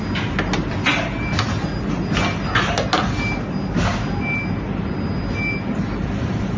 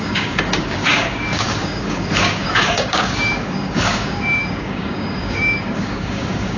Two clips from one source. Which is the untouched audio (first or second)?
first